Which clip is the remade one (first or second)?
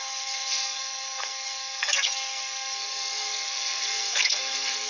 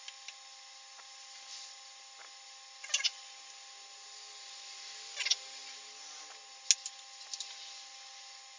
first